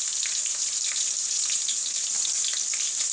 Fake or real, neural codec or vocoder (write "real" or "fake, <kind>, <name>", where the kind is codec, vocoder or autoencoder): fake, vocoder, BigVGAN v2